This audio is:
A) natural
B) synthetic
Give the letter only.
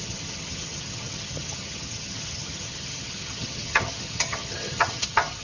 B